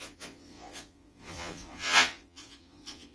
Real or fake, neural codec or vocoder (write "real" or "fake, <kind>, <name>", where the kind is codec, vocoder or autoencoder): fake, vocoder, Vocos